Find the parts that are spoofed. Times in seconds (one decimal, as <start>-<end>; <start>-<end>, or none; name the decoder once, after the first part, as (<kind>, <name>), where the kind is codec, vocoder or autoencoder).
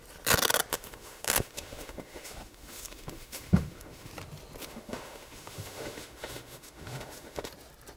0.7-4.1 (autoencoder, DAC-VAE); 4.6-7.5